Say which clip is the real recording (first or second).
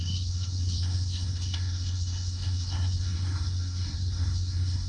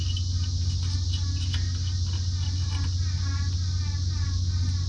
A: second